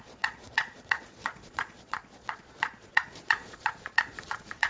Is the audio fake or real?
fake